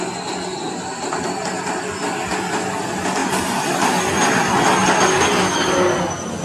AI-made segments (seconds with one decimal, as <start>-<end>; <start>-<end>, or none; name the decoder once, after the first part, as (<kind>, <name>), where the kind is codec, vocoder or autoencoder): none